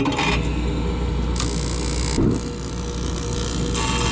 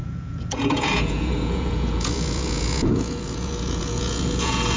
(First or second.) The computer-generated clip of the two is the second